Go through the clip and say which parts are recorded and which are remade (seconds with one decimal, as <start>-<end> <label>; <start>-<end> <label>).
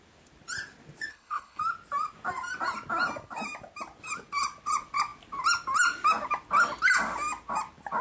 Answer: 0.0-1.1 recorded; 1.1-1.6 remade; 1.6-8.0 recorded